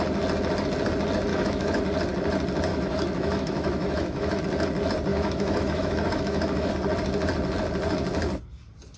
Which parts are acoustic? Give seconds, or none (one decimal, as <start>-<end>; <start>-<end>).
0.0-1.3; 1.8-2.7; 4.4-5.1; 6.7-9.0